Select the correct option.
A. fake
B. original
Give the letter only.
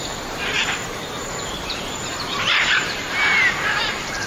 A